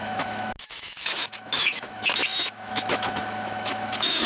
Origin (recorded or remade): remade